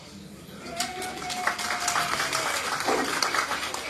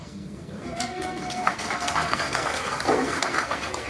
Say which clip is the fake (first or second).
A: second